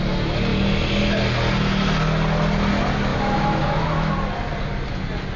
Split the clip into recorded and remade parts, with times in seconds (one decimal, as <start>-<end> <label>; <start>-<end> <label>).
0.0-3.1 recorded; 3.1-4.1 remade; 4.1-5.4 recorded